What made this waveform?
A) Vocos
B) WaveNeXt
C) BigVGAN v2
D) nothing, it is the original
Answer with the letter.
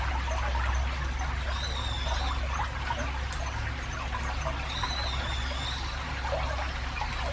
D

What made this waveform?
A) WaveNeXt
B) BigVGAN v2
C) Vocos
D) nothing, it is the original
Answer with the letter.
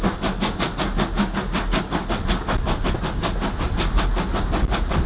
D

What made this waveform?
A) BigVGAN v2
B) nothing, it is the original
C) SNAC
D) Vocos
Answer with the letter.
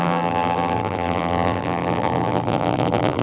A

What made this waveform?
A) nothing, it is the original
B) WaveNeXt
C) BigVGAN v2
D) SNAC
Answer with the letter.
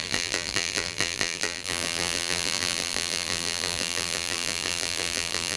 C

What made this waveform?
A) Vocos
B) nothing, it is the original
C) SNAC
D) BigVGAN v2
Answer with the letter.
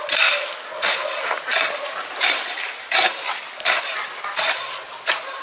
B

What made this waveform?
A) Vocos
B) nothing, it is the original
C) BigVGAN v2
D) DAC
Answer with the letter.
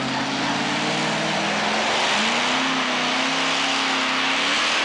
B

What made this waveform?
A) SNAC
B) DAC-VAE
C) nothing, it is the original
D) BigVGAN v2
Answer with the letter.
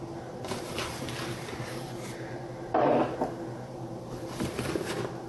D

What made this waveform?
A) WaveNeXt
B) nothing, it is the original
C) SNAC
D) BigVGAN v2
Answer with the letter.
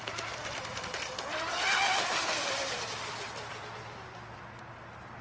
D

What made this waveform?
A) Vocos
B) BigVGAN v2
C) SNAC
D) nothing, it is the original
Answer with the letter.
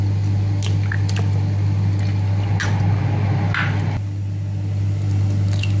D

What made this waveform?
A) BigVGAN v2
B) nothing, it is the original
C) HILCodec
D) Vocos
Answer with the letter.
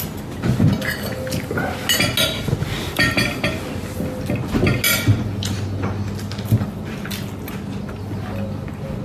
B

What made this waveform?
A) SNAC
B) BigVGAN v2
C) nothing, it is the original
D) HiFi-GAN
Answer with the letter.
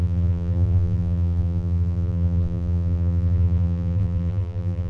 B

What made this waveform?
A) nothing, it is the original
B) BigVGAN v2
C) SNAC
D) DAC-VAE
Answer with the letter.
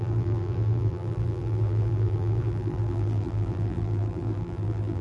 B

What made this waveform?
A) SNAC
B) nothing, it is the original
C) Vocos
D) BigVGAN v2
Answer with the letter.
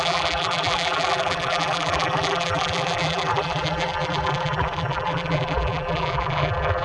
D